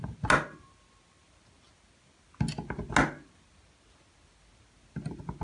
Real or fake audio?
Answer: real